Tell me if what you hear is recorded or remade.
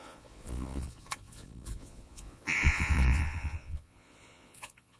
remade